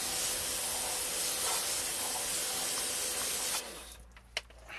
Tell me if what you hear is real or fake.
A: real